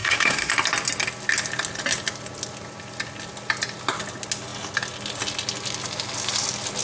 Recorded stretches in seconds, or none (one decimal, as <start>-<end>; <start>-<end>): 0.5-6.8